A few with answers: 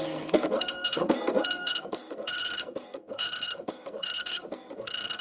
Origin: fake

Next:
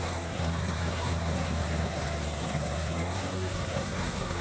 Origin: fake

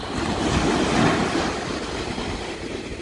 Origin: real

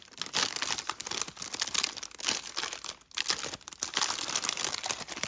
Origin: real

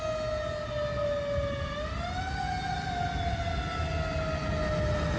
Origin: real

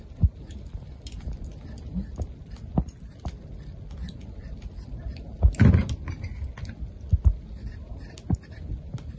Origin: real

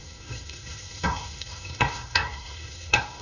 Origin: fake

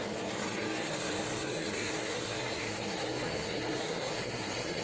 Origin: fake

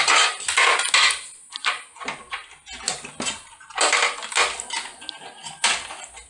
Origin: real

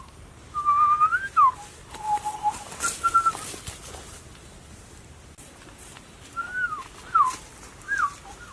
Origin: real